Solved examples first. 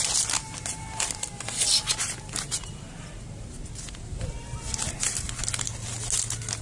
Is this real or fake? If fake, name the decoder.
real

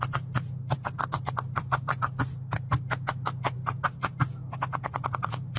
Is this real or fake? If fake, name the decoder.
real